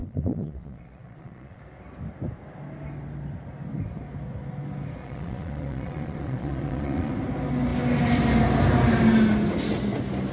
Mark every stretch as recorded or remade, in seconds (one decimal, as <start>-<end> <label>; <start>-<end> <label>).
0.0-1.6 remade; 1.6-5.0 recorded; 5.0-7.1 remade; 7.1-10.3 recorded